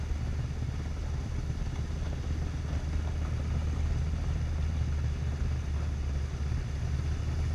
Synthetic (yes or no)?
no